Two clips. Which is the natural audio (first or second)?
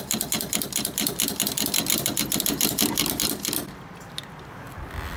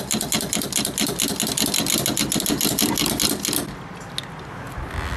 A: second